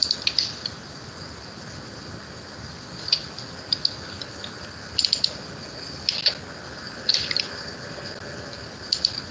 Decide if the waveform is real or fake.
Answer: real